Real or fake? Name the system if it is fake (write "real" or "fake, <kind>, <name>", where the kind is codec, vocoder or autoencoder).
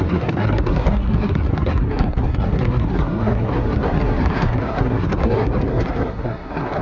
fake, codec, SNAC